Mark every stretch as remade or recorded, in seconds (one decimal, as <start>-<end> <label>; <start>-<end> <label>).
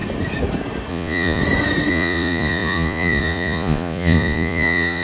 0.0-0.9 recorded; 0.9-1.4 remade; 1.4-1.9 recorded; 1.9-5.0 remade